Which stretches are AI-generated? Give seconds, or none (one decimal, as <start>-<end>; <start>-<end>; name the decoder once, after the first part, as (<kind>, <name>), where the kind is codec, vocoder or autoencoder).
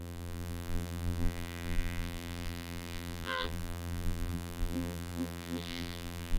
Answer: 0.0-6.4 (vocoder, BigVGAN v2)